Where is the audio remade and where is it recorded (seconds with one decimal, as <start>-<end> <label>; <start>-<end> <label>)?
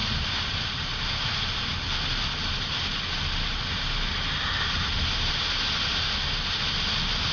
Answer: 0.0-1.6 remade; 1.6-5.9 recorded; 5.9-6.6 remade; 6.6-7.3 recorded